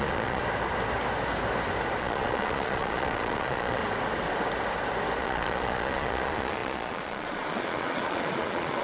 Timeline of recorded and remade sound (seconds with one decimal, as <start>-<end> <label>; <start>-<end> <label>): 0.0-0.4 remade; 0.4-2.0 recorded; 2.0-3.8 remade; 3.8-5.2 recorded; 5.2-8.8 remade